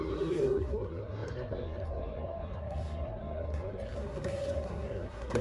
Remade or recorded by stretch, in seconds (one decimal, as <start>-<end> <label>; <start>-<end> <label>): 0.0-5.4 remade